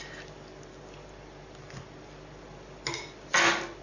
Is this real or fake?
real